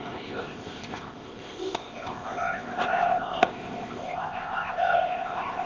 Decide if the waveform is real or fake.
fake